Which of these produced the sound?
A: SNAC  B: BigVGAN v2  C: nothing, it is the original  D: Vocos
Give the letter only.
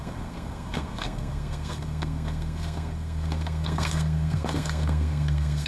A